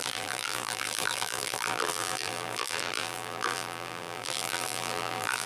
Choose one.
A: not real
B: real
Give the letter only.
A